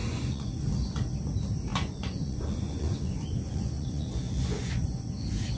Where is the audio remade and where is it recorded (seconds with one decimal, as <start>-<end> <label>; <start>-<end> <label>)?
0.0-0.6 remade; 0.6-1.7 recorded; 1.7-5.1 remade; 5.1-5.6 recorded